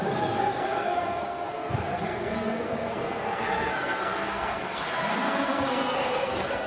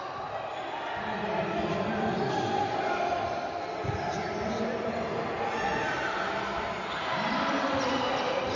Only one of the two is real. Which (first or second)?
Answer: second